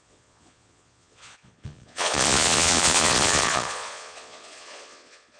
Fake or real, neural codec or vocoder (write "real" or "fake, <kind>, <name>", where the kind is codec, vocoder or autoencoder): fake, vocoder, Vocos